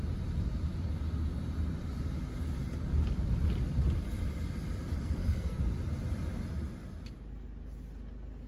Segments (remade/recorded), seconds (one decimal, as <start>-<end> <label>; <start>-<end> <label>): 0.0-5.0 recorded; 5.0-5.6 remade; 5.6-8.5 recorded